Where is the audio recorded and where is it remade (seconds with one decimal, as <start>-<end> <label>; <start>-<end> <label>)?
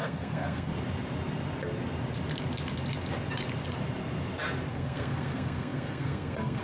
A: 0.0-0.7 remade; 0.7-4.7 recorded; 4.7-6.6 remade